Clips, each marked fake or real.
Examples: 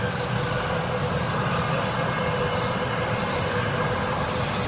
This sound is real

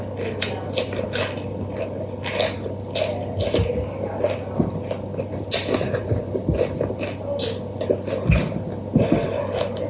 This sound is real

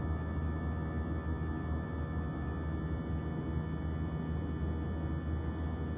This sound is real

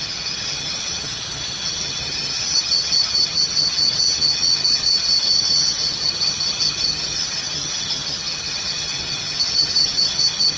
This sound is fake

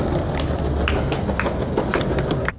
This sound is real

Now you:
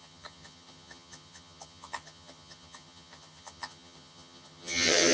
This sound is fake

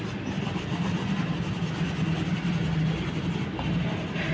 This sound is real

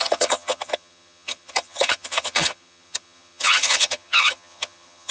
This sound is fake